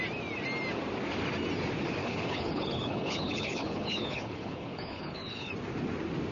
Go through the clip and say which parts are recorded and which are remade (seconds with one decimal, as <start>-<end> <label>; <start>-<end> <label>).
0.0-2.0 recorded; 2.0-5.5 remade; 5.5-6.3 recorded

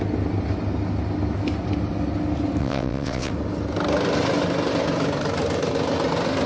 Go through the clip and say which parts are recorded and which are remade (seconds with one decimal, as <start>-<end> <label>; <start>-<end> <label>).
0.0-2.6 recorded; 2.6-3.3 remade; 3.3-6.5 recorded